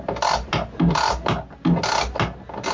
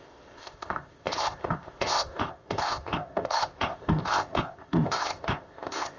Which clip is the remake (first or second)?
second